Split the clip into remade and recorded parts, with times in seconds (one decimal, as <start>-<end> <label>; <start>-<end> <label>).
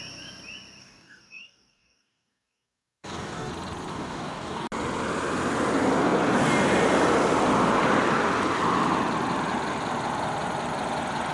0.0-0.8 recorded; 0.8-3.5 remade; 3.5-3.9 recorded; 3.9-4.7 remade; 4.7-11.3 recorded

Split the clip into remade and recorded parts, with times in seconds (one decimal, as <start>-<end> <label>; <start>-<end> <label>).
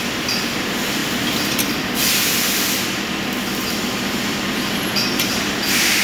0.0-6.0 remade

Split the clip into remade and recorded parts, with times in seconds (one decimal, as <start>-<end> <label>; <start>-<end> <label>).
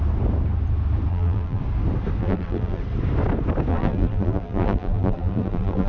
0.0-1.1 recorded; 1.1-1.6 remade; 1.6-2.2 recorded; 2.2-2.8 remade; 2.8-3.7 recorded; 3.7-5.9 remade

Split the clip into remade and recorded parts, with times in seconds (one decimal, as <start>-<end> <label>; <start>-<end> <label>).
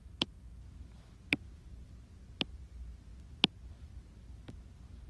0.0-5.1 recorded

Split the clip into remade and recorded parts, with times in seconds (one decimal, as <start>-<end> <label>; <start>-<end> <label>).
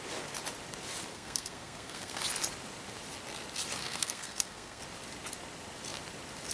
0.0-1.1 recorded; 1.1-2.2 remade; 2.2-3.8 recorded; 3.8-4.8 remade; 4.8-6.5 recorded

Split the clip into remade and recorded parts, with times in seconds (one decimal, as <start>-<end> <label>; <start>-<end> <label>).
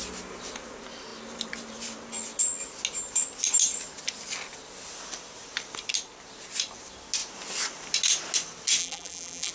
0.0-8.8 recorded; 8.8-9.5 remade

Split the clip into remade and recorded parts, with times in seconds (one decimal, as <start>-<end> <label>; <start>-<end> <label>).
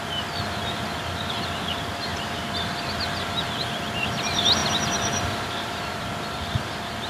0.0-2.1 recorded; 2.1-3.1 remade; 3.1-4.6 recorded; 4.6-6.1 remade; 6.1-7.1 recorded